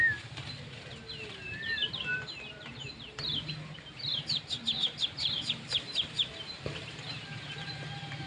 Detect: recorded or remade recorded